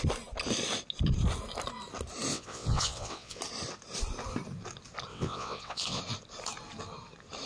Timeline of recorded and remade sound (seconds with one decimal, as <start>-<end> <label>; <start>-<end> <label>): 0.0-2.3 recorded; 2.3-3.4 remade; 3.4-5.1 recorded; 5.1-6.0 remade; 6.0-7.5 recorded